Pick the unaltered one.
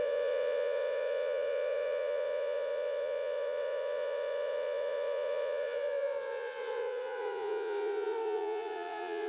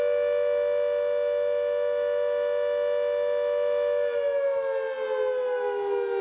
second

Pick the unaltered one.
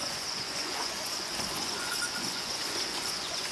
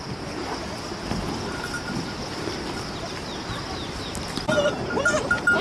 second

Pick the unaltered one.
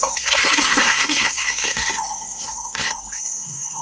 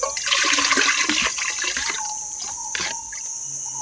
second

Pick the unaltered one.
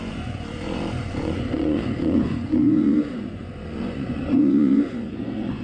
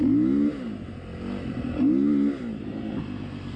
second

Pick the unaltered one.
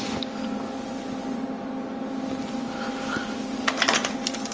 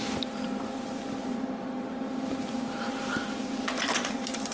first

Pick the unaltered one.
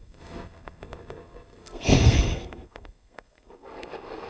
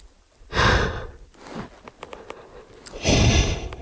second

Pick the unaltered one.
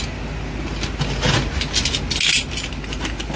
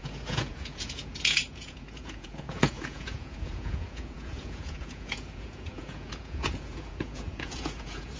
first